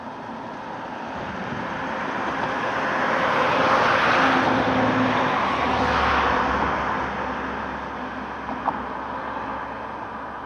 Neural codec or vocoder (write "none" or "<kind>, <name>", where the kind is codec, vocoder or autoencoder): none